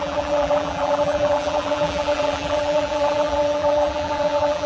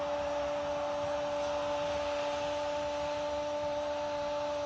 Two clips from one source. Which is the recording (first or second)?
second